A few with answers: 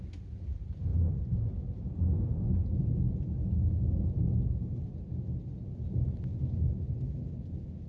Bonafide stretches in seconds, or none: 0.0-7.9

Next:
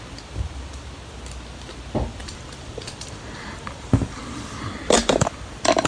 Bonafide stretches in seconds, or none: 0.0-2.2

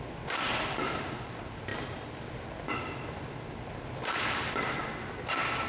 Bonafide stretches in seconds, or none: 0.0-5.7

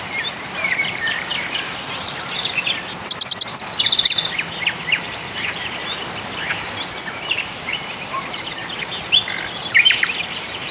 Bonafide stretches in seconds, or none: 1.3-4.9; 5.8-7.2; 8.6-9.7

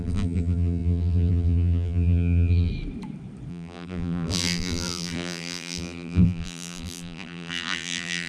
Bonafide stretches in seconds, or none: 2.7-3.5

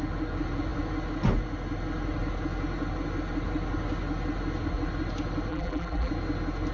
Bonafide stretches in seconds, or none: 0.0-5.5; 6.1-6.7

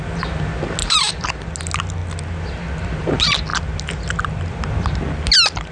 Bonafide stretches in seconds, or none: 0.0-0.8; 1.5-5.7

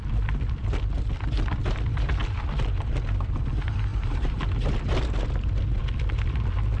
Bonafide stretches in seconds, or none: 0.0-3.9; 4.7-6.8